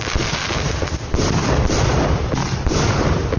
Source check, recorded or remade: remade